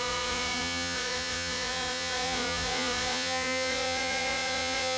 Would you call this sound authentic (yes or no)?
no